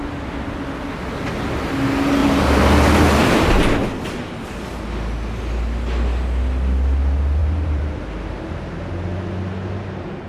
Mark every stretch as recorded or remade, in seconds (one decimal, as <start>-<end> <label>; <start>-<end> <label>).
0.0-2.2 recorded; 2.2-3.6 remade; 3.6-7.4 recorded; 7.4-8.0 remade; 8.0-10.3 recorded